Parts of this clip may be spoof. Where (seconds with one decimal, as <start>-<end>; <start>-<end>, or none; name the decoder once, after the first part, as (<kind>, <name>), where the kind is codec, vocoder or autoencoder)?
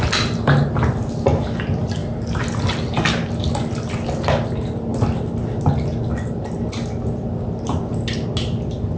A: none